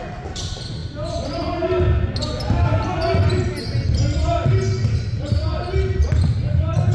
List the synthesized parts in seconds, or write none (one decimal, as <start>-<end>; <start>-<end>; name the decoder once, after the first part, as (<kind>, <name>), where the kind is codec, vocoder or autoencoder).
none